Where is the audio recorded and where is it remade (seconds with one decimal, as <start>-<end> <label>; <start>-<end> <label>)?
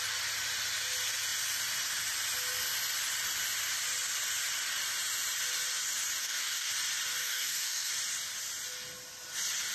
0.0-6.2 recorded; 6.2-6.7 remade; 6.7-7.2 recorded; 7.2-7.9 remade; 7.9-9.7 recorded